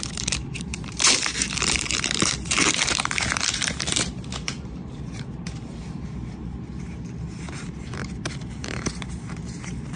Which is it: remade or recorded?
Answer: remade